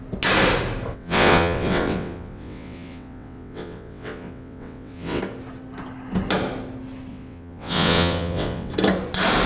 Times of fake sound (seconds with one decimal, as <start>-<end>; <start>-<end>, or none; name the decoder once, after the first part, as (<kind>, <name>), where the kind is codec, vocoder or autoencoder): 0.9-5.2 (vocoder, WaveNeXt); 7.1-8.7